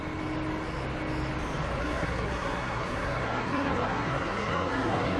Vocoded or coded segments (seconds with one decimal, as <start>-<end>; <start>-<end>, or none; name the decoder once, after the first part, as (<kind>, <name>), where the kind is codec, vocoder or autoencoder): 1.8-5.2 (codec, SNAC)